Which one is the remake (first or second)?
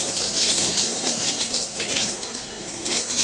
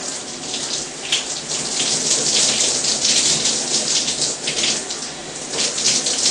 first